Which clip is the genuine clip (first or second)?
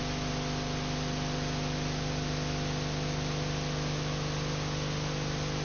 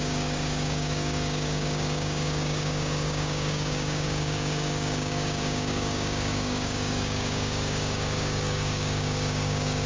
first